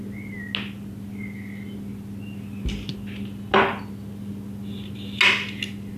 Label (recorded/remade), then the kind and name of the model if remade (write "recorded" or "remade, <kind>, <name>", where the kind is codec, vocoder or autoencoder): recorded